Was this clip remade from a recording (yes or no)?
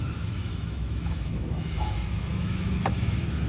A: yes